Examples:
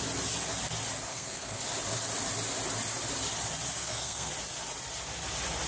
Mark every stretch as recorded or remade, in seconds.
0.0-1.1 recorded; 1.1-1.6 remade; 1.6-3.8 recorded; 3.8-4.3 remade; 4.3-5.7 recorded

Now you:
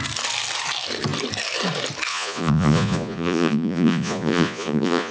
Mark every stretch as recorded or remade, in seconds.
0.0-2.1 recorded; 2.1-5.1 remade